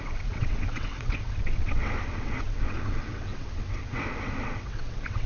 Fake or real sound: fake